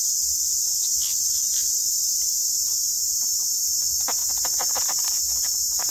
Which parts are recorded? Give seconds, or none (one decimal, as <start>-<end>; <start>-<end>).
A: 0.0-5.9